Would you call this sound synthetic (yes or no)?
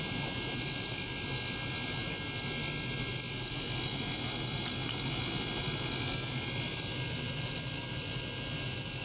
no